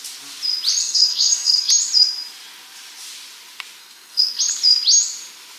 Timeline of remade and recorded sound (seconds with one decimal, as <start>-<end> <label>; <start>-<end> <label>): 0.0-0.8 recorded; 0.8-1.7 remade; 1.7-3.8 recorded; 3.8-4.4 remade; 4.4-5.6 recorded